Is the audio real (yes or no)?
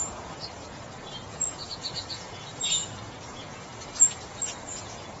no